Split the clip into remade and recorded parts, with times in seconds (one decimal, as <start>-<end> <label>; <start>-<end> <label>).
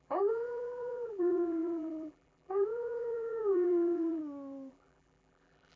0.0-4.2 remade; 4.2-4.7 recorded; 4.7-5.8 remade